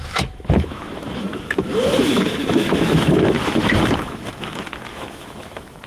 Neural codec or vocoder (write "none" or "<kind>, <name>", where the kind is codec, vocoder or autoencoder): autoencoder, DAC-VAE